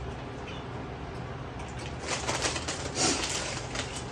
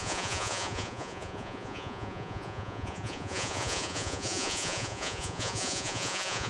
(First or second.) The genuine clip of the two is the first